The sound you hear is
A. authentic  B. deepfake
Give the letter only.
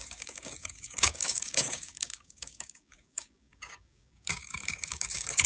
B